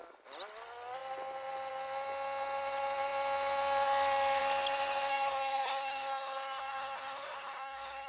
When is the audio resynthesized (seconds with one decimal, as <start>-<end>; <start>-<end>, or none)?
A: 5.1-8.1